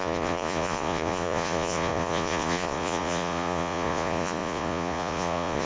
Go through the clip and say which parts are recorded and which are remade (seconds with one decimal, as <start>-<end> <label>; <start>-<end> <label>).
0.0-5.7 remade